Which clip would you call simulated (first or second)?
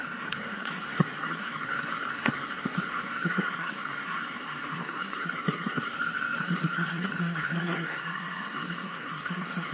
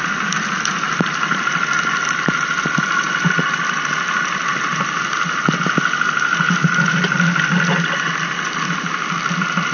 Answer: first